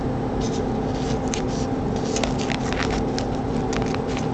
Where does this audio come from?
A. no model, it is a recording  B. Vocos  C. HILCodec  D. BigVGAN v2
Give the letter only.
A